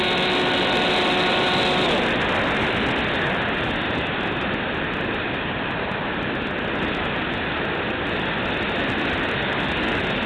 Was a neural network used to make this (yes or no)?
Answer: no